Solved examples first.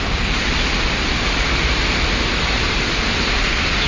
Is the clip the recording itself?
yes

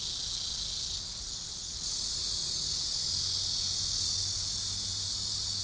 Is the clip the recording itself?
yes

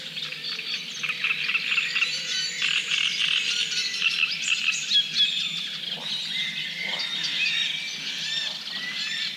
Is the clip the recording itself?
yes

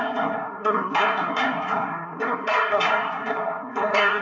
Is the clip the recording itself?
no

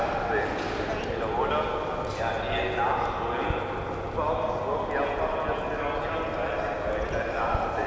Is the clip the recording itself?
yes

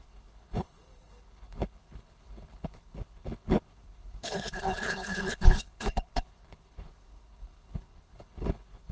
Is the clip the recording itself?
no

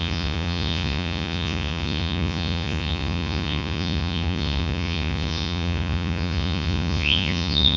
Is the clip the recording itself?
no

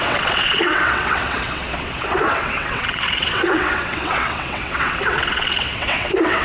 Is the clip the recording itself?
no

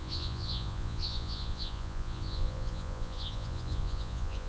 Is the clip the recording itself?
no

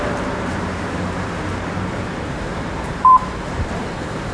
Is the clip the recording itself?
no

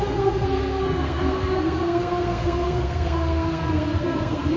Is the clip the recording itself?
no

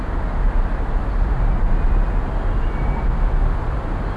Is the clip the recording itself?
yes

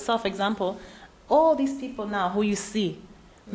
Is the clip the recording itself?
yes